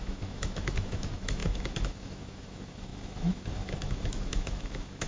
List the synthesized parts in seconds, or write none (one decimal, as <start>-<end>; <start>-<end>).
0.0-5.1